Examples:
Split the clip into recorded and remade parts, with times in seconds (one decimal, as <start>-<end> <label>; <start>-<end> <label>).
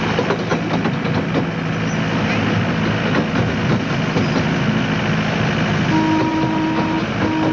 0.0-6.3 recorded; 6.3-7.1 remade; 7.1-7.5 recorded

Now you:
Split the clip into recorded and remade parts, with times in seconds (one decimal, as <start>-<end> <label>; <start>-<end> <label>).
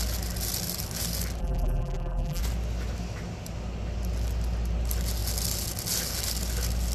0.0-1.4 recorded; 1.4-2.4 remade; 2.4-6.9 recorded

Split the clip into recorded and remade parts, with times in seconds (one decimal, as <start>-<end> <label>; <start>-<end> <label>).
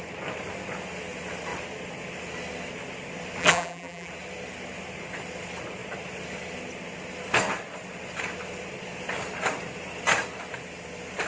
0.0-3.4 recorded; 3.4-4.1 remade; 4.1-11.3 recorded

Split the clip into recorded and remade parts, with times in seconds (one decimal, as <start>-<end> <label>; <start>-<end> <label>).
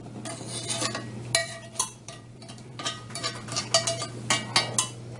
0.0-1.4 recorded; 1.4-3.6 remade; 3.6-5.2 recorded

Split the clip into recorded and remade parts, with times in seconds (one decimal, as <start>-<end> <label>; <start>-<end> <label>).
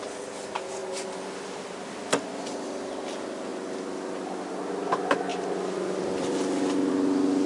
0.0-0.8 recorded; 0.8-2.3 remade; 2.3-5.3 recorded; 5.3-6.9 remade; 6.9-7.5 recorded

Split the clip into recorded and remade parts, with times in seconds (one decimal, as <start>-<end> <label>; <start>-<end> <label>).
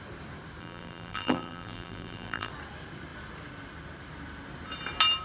0.0-0.6 recorded; 0.6-2.5 remade; 2.5-5.2 recorded